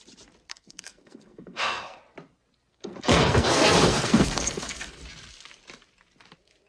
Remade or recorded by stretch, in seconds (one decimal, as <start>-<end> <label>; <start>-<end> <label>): 0.0-0.5 recorded; 0.5-2.0 remade; 2.0-2.7 recorded; 2.7-5.0 remade; 5.0-6.7 recorded